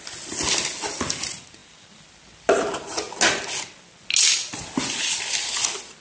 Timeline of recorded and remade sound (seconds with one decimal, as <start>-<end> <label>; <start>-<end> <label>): 0.0-6.0 recorded